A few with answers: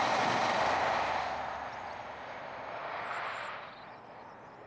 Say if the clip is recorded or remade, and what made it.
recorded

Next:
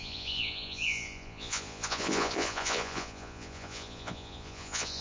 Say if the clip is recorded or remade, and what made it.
remade, vocoder, Vocos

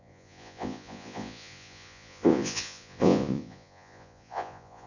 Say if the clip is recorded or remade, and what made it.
remade, vocoder, Vocos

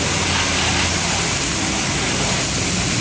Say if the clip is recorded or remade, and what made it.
recorded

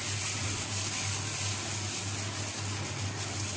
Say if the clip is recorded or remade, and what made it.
recorded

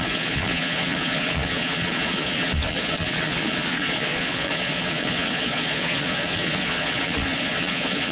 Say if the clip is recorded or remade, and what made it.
remade, vocoder, Vocos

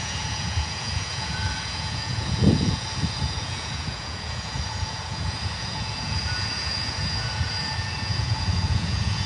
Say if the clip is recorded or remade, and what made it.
remade, vocoder, Vocos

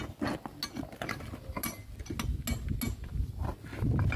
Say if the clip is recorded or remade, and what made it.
recorded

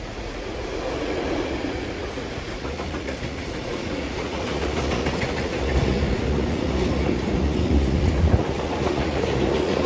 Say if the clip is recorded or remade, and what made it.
remade, vocoder, Vocos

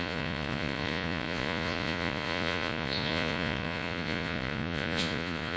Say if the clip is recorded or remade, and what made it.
remade, vocoder, Vocos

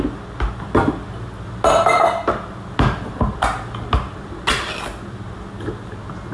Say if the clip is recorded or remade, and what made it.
recorded